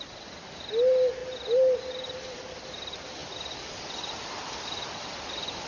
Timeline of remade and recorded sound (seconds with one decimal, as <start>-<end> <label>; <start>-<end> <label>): 0.0-5.7 recorded